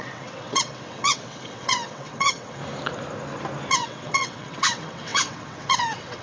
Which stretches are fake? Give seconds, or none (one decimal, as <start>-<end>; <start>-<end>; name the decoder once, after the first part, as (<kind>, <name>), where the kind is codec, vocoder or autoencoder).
0.0-2.6 (vocoder, WaveNeXt); 3.7-6.2